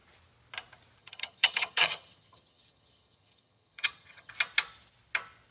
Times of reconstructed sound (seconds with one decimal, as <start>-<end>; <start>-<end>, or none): 1.0-4.3